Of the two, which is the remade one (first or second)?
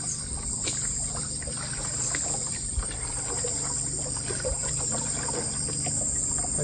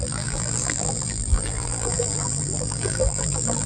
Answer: second